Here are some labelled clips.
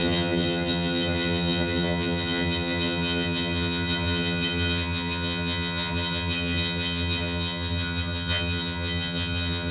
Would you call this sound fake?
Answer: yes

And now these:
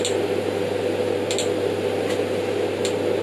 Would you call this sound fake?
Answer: no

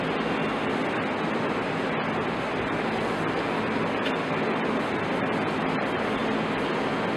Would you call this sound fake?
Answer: no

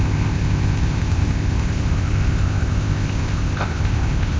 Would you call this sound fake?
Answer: yes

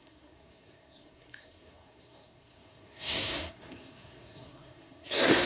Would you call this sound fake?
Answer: yes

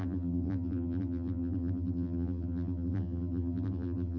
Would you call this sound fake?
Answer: yes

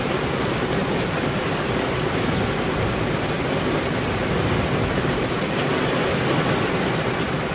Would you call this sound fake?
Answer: no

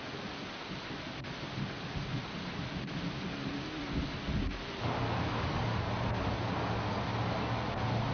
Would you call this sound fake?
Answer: no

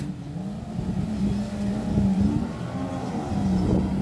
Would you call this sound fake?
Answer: no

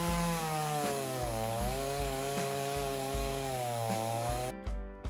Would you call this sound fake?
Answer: yes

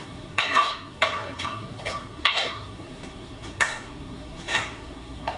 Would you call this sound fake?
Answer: yes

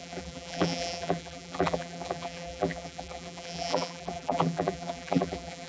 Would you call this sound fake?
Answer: yes